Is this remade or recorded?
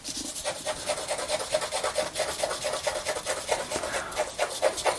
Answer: recorded